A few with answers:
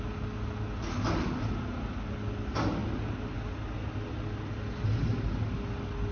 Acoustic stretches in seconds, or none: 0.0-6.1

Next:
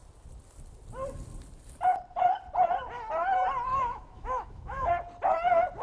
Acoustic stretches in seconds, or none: 0.0-3.7; 4.9-5.8

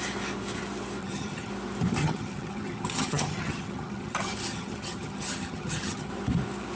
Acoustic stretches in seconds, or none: 0.0-1.0; 1.5-2.0; 6.1-6.8

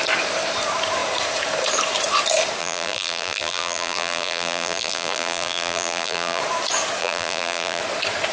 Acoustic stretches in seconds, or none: 0.0-2.6; 6.4-7.0; 7.8-8.3

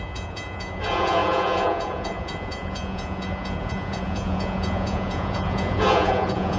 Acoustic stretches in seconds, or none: none

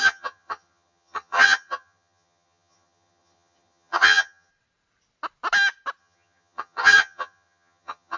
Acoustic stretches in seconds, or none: 4.5-6.0

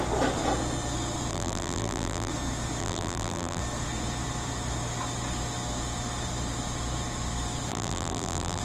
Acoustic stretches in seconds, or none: 0.0-1.3; 2.3-2.8; 3.6-7.7

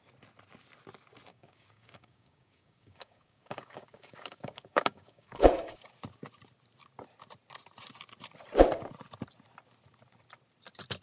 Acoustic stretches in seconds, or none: 0.0-1.3; 5.8-11.0